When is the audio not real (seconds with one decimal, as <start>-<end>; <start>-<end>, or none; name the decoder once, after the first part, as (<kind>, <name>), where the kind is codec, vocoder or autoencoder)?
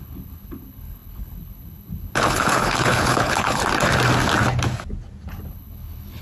0.0-3.6 (codec, HILCodec); 5.3-6.2